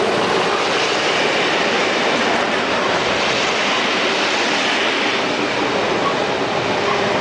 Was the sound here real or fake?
real